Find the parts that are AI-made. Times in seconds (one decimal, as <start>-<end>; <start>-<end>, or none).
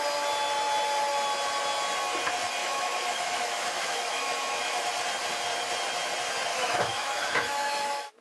2.6-4.9; 6.5-8.2